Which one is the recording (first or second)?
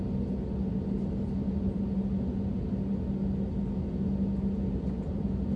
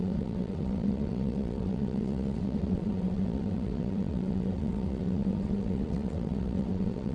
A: first